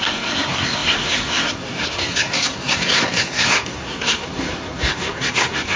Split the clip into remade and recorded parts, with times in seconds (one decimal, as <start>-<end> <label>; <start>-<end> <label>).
0.0-5.8 remade